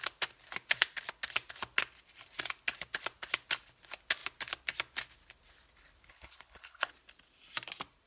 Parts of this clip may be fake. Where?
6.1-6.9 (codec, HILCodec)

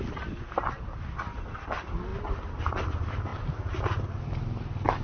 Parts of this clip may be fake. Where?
none

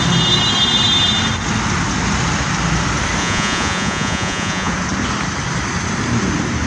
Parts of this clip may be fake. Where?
3.2-4.7 (vocoder, Vocos)

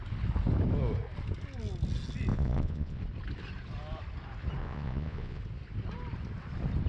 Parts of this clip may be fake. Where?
2.3-3.0 (vocoder, Vocos); 4.6-5.4

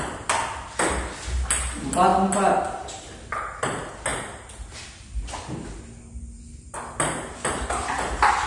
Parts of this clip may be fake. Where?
none

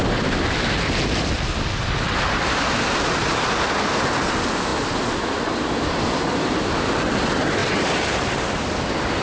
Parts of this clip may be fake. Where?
7.6-8.6 (vocoder, BigVGAN v2)

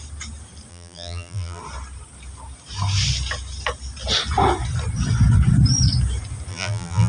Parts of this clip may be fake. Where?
0.7-1.6 (vocoder, BigVGAN v2); 6.5-7.1